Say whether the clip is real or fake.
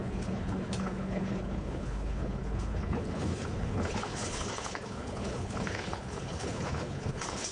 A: fake